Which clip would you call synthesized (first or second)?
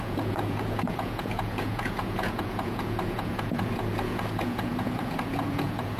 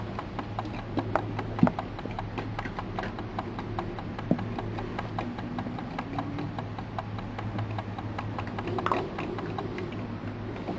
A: first